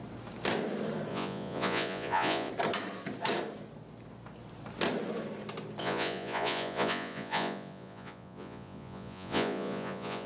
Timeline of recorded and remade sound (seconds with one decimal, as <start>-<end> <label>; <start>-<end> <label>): 0.0-1.1 recorded; 1.1-2.5 remade; 2.5-5.8 recorded; 5.8-10.3 remade